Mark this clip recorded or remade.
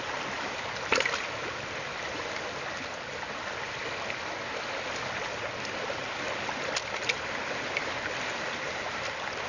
recorded